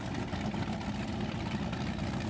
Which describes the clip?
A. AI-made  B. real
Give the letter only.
B